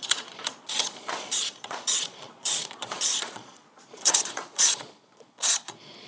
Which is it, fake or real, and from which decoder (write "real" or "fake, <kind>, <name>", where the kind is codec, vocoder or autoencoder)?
fake, vocoder, Vocos